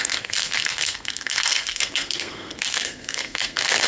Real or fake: fake